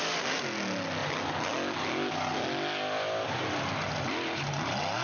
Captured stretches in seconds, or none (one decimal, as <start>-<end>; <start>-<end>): 0.0-5.0

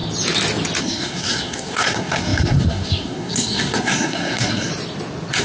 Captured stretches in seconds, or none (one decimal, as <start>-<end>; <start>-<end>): 0.0-0.8; 4.7-5.4